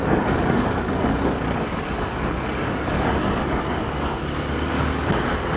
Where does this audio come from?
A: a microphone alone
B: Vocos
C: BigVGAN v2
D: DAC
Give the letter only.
D